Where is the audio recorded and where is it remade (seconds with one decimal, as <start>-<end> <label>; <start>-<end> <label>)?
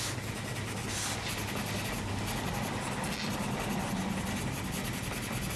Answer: 0.0-5.6 recorded